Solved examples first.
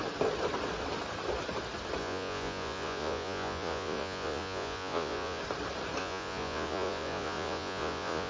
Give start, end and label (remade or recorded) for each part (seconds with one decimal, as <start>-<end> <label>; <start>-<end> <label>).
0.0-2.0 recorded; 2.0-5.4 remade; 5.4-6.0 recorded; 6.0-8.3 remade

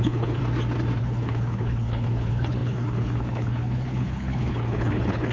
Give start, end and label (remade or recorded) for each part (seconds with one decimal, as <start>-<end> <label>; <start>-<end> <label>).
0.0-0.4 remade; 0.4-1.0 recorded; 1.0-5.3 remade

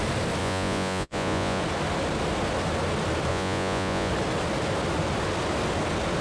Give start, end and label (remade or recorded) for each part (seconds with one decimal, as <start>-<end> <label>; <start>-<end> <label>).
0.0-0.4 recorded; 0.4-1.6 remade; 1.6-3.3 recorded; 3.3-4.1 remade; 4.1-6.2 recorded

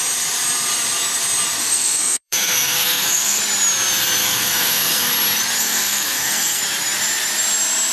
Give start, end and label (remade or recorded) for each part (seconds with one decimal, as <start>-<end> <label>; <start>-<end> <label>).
0.0-1.6 recorded; 1.6-3.4 remade; 3.4-4.2 recorded; 4.2-5.1 remade; 5.1-5.6 recorded; 5.6-6.6 remade; 6.6-7.9 recorded